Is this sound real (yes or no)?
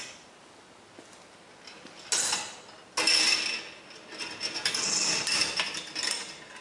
yes